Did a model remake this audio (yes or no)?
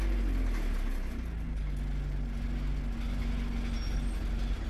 no